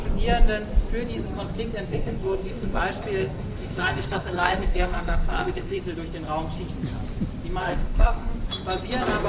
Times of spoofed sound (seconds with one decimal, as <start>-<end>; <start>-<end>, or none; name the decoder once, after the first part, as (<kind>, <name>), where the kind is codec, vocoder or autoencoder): 1.9-2.8 (codec, SNAC); 3.2-5.8; 7.6-8.3